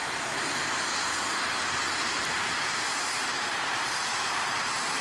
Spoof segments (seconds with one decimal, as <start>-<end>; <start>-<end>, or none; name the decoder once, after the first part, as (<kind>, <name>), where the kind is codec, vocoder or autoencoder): 0.0-1.1 (vocoder, BigVGAN v2); 3.2-5.0